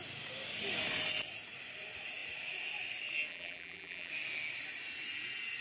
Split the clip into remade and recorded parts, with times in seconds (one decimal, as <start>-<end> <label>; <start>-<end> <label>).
0.0-3.3 recorded; 3.3-4.1 remade; 4.1-5.6 recorded